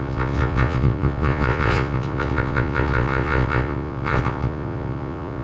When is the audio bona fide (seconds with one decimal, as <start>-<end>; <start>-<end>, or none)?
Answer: none